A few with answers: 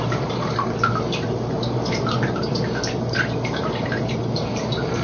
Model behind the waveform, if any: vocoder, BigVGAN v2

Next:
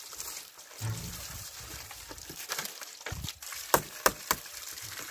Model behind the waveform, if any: vocoder, BigVGAN v2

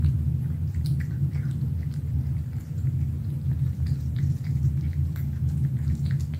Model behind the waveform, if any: none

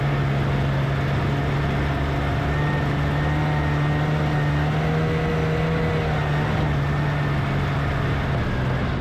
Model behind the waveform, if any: none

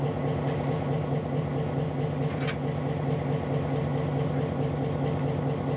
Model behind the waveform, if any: none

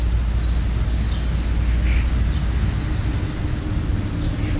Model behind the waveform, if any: none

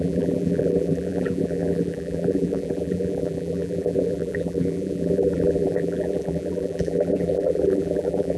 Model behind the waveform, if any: vocoder, BigVGAN v2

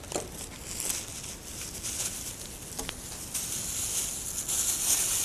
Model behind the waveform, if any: none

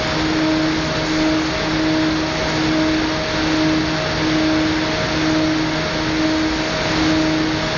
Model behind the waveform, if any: none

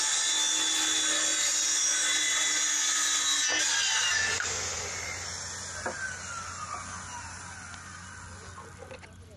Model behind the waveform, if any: none